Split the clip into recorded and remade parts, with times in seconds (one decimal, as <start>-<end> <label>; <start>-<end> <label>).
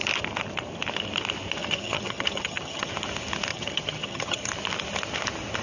0.0-1.6 recorded; 1.6-2.9 remade; 2.9-3.5 recorded; 3.5-4.5 remade; 4.5-5.6 recorded